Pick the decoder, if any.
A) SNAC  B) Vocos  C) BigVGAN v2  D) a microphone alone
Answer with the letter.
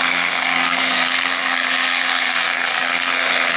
A